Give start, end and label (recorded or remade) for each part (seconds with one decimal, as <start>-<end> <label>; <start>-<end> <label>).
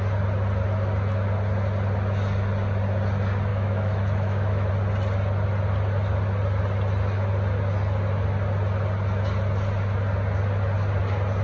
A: 0.0-3.5 recorded; 3.5-4.7 remade; 4.7-11.4 recorded